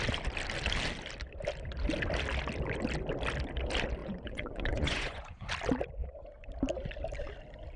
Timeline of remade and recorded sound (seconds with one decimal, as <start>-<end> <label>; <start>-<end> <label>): 0.0-4.0 recorded; 4.0-5.5 remade; 5.5-7.8 recorded